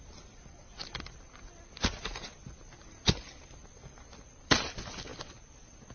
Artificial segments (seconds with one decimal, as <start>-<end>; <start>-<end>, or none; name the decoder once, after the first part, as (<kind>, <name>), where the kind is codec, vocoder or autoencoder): none